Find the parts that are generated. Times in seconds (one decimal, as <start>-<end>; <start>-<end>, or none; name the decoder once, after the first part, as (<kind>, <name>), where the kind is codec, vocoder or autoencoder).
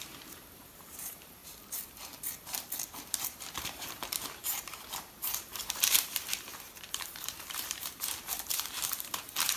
0.0-1.4 (vocoder, BigVGAN v2); 3.1-9.6